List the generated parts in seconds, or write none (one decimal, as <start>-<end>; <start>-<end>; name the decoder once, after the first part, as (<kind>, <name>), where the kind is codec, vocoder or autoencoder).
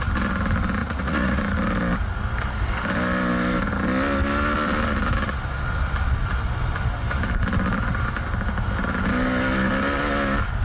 0.8-1.4 (vocoder, Vocos)